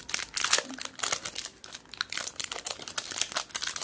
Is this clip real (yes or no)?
yes